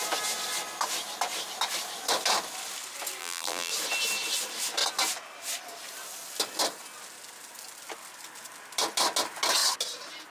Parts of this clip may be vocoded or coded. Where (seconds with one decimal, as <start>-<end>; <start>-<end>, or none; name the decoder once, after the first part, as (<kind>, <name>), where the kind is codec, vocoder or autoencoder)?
3.2-3.7 (vocoder, BigVGAN v2)